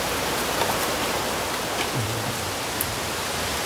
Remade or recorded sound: remade